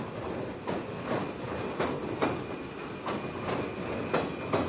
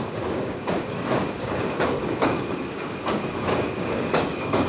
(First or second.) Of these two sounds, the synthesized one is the second